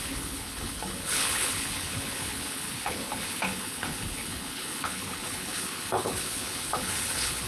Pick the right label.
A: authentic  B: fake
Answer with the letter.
B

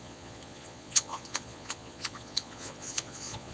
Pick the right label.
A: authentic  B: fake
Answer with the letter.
B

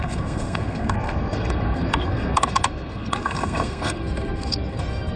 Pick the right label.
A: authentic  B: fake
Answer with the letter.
B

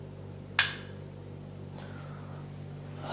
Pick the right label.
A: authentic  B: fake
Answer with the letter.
A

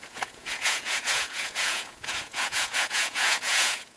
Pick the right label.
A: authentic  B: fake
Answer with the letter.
B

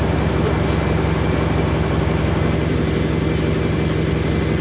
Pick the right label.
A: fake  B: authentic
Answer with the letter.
B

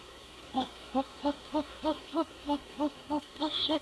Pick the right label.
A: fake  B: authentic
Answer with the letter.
A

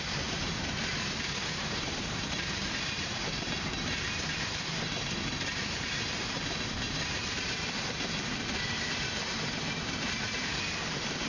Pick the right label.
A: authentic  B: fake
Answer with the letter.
B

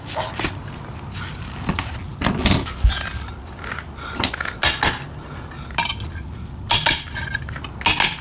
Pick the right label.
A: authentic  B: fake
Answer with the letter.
A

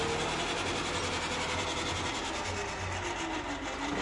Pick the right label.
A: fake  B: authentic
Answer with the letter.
B